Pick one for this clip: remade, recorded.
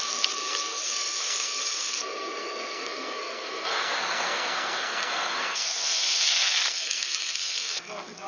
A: remade